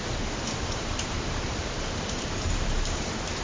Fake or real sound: fake